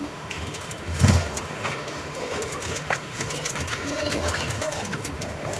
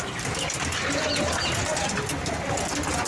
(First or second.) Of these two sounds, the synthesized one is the first